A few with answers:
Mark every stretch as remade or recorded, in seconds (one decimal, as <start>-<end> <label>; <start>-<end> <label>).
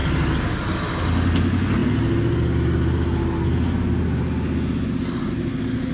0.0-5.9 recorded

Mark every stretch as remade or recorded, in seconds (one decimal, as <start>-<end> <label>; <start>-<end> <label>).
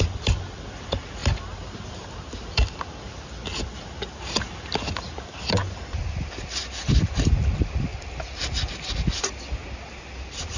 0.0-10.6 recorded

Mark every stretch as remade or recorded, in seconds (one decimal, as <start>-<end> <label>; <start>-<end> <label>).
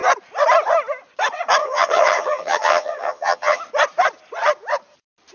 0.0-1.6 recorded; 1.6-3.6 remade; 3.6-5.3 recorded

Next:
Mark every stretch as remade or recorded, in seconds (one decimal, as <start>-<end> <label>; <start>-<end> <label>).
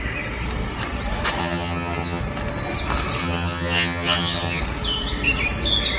0.0-1.4 recorded; 1.4-2.2 remade; 2.2-3.2 recorded; 3.2-4.6 remade; 4.6-6.0 recorded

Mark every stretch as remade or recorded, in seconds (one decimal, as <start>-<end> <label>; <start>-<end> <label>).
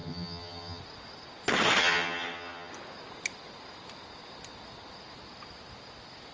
0.0-0.8 remade; 0.8-1.8 recorded; 1.8-2.7 remade; 2.7-6.3 recorded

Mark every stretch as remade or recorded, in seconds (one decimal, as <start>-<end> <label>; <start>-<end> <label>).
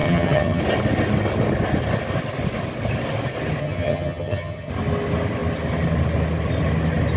0.0-0.6 remade; 0.6-3.6 recorded; 3.6-4.7 remade; 4.7-7.2 recorded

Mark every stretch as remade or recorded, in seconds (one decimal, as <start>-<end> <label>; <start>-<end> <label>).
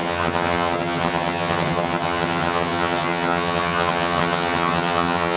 0.0-5.4 remade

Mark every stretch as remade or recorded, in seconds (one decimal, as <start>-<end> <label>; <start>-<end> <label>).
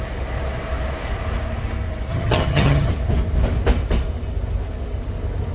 0.0-2.1 recorded; 2.1-2.9 remade; 2.9-5.5 recorded